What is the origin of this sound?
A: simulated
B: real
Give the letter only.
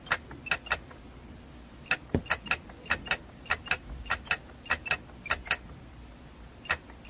B